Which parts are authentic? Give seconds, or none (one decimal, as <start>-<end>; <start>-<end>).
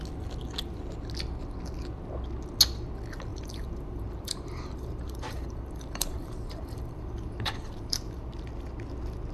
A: 0.0-3.3; 8.3-9.3